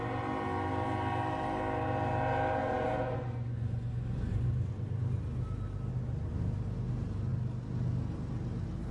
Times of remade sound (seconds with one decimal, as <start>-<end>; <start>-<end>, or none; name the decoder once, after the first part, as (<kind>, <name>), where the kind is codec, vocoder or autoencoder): 2.6-4.7 (vocoder, Vocos)